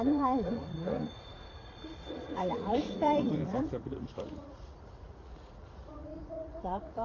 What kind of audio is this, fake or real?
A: fake